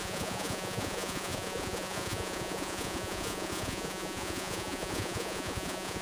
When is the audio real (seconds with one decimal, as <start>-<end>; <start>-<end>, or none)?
none